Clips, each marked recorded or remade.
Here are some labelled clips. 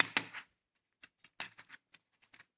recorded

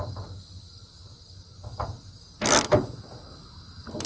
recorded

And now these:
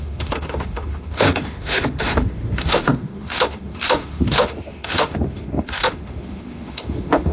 remade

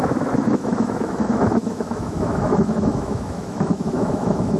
remade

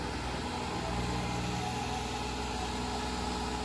recorded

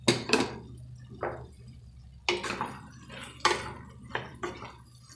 recorded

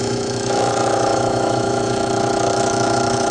remade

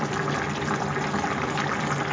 recorded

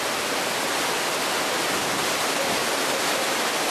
recorded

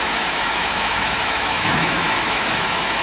remade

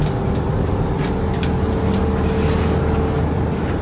recorded